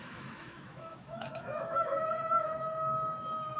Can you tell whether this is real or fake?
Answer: fake